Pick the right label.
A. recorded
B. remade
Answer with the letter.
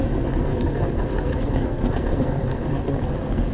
B